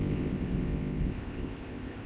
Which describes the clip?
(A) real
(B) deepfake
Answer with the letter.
B